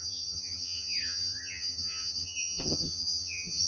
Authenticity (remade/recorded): remade